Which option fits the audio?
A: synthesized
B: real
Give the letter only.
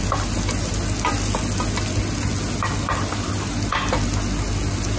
B